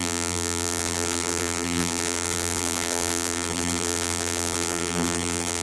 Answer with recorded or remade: remade